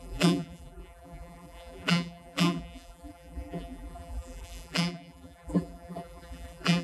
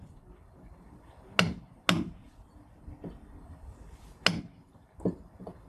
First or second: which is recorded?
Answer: second